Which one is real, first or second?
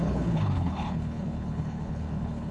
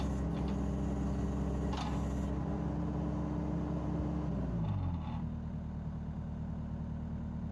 second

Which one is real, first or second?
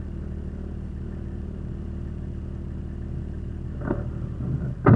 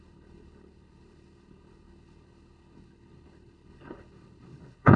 first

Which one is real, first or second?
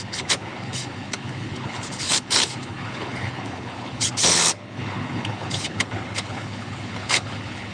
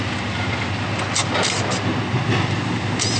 second